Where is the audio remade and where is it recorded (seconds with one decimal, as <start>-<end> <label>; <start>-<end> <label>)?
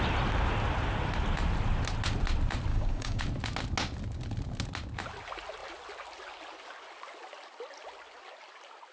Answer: 0.0-2.7 recorded; 2.7-3.2 remade; 3.2-8.9 recorded